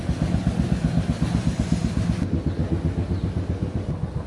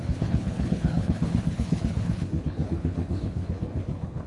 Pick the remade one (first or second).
second